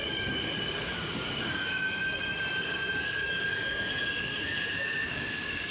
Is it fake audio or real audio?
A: fake